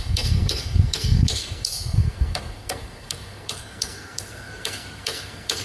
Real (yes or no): no